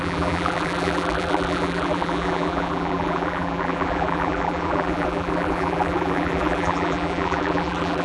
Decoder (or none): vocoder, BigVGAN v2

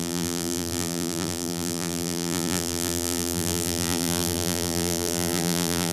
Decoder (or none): vocoder, BigVGAN v2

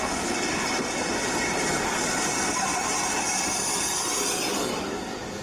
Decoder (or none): none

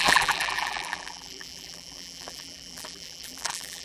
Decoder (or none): vocoder, BigVGAN v2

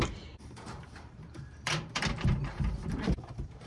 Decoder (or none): vocoder, BigVGAN v2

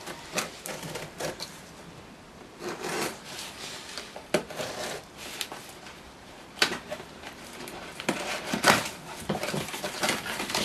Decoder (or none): vocoder, BigVGAN v2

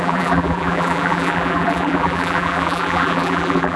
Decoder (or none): vocoder, BigVGAN v2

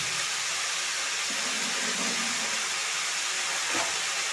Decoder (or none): none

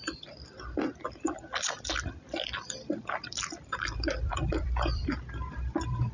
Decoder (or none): vocoder, BigVGAN v2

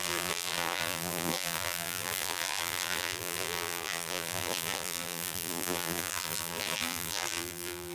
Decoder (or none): vocoder, BigVGAN v2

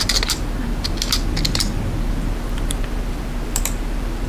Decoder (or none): vocoder, BigVGAN v2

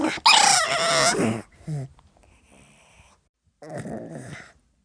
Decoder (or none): none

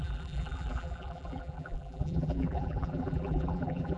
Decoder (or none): vocoder, BigVGAN v2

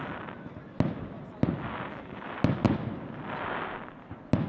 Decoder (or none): none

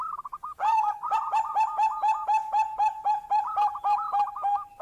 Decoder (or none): none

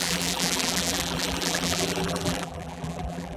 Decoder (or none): vocoder, BigVGAN v2